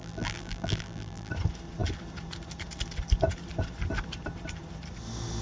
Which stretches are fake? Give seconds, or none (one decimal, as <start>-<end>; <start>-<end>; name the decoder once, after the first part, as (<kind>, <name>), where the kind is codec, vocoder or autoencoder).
0.0-1.3 (vocoder, BigVGAN v2)

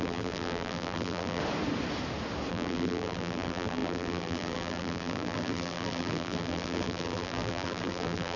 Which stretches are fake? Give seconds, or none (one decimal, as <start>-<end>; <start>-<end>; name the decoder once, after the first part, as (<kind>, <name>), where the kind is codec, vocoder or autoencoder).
0.0-1.4 (vocoder, BigVGAN v2); 2.5-8.4

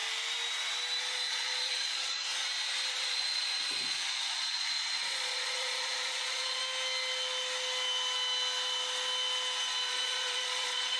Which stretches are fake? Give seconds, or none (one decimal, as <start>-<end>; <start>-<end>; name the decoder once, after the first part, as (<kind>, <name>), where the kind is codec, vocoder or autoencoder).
1.0-2.3 (vocoder, Vocos); 2.9-6.6; 9.9-11.0

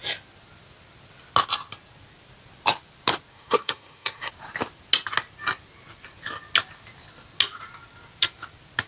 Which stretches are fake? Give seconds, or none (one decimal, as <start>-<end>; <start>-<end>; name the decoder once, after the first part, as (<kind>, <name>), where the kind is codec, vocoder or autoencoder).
3.3-4.3 (codec, SNAC)

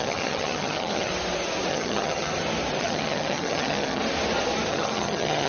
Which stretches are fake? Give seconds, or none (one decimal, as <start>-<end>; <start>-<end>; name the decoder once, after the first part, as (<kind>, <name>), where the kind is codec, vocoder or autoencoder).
0.0-1.1 (vocoder, HiFi-GAN); 1.7-2.3; 2.8-4.0; 4.7-5.5

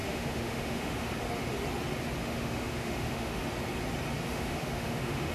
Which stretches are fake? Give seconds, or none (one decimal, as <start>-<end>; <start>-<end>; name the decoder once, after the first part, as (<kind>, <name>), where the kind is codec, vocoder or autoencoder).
0.0-1.1 (autoencoder, DAC-VAE); 2.2-3.4; 4.3-5.3

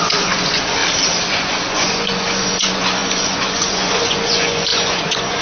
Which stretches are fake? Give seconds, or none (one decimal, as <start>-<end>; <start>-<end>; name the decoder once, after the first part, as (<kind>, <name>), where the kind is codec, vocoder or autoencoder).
0.0-0.8 (vocoder, Vocos); 1.3-5.4